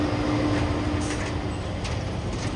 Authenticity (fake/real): real